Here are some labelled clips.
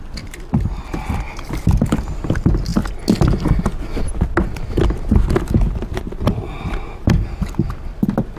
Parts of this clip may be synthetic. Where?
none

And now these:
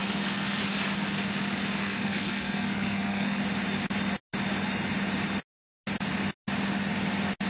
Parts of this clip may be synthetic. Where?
0.0-0.6 (codec, SNAC); 1.8-3.4